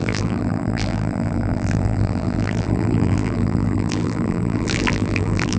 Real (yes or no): no